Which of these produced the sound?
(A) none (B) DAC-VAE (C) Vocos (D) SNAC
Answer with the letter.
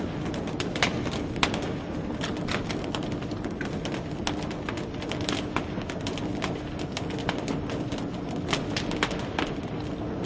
A